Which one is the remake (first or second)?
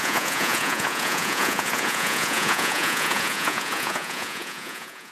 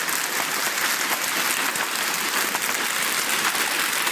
first